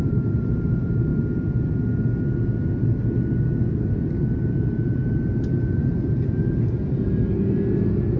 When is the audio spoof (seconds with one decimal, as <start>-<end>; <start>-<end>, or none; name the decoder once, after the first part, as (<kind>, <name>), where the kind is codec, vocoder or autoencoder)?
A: 0.0-1.1 (vocoder, BigVGAN v2); 3.9-8.2